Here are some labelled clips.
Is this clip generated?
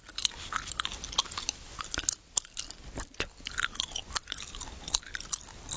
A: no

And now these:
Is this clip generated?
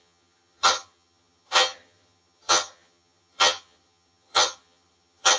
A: yes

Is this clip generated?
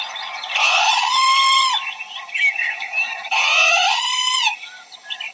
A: no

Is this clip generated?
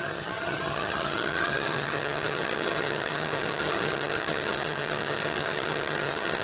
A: yes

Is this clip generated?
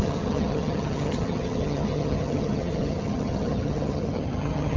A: yes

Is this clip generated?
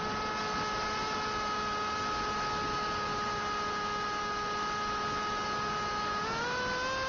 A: no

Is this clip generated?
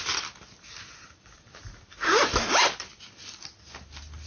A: no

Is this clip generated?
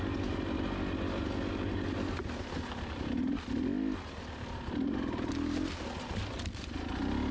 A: no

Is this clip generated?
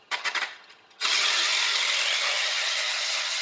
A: yes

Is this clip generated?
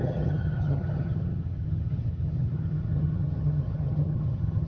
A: yes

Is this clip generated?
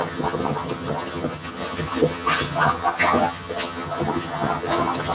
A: yes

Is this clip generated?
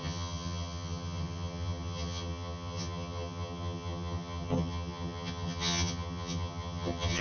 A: yes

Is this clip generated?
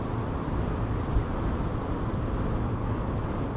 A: no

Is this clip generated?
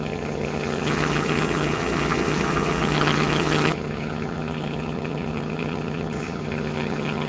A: yes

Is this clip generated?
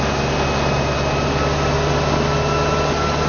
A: no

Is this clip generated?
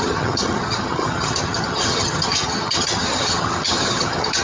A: yes